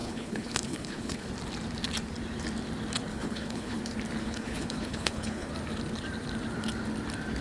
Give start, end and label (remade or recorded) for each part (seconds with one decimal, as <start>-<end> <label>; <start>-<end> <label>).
0.0-1.3 remade; 1.3-3.1 recorded; 3.1-3.8 remade; 3.8-4.2 recorded; 4.2-5.5 remade; 5.5-7.4 recorded